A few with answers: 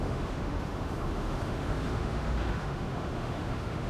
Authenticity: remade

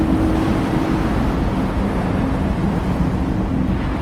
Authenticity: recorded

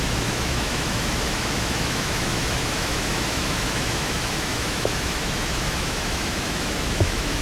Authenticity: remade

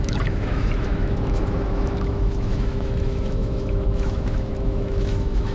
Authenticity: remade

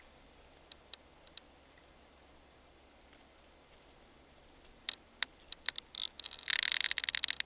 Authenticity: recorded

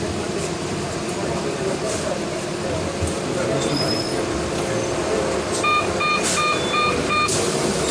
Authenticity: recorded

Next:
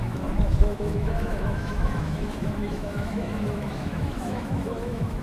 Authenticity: remade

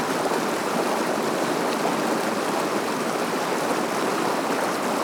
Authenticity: recorded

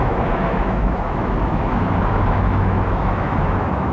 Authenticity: remade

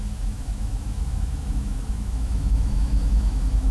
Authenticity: remade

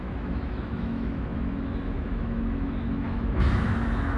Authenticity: remade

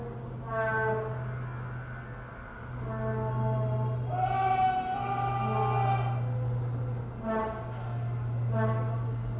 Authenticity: recorded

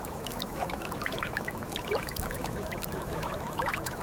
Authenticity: remade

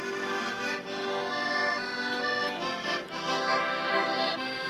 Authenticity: recorded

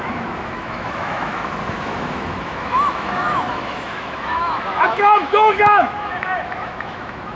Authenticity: remade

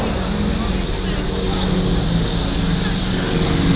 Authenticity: recorded